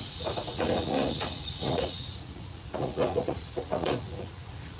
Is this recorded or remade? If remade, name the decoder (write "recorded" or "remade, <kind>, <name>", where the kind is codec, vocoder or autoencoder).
remade, vocoder, Vocos